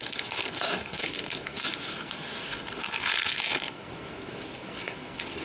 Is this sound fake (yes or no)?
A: yes